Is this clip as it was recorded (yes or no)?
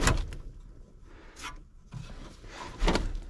yes